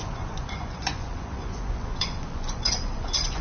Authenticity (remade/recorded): remade